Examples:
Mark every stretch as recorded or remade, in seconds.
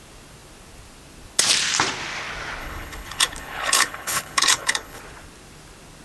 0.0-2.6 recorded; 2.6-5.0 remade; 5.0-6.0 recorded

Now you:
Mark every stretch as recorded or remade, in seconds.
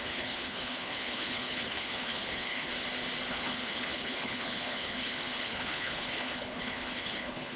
0.0-2.7 remade; 2.7-3.3 recorded; 3.3-7.6 remade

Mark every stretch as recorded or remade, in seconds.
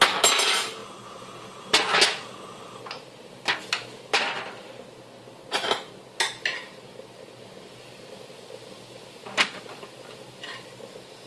0.0-11.3 recorded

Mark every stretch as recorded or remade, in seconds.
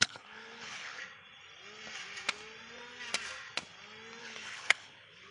0.0-1.0 remade; 1.0-4.2 recorded; 4.2-5.3 remade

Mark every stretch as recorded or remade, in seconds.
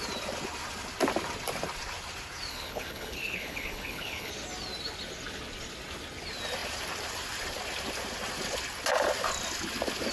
0.0-2.5 recorded; 2.5-4.3 remade; 4.3-10.1 recorded